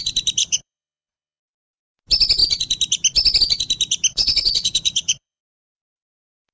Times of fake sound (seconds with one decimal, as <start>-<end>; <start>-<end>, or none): 0.4-1.4; 4.1-5.4